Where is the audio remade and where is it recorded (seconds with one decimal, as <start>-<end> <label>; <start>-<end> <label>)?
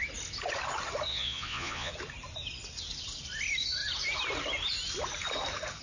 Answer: 0.0-1.1 recorded; 1.1-1.9 remade; 1.9-5.8 recorded